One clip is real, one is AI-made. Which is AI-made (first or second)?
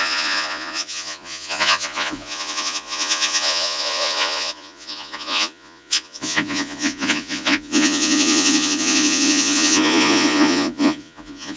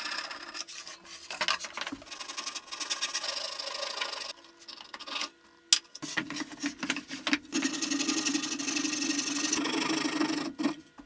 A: first